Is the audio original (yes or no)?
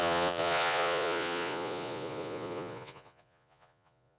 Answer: no